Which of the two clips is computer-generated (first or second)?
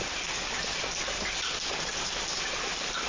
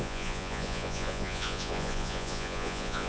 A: second